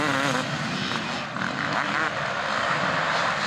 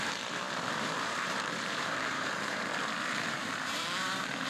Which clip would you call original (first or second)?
first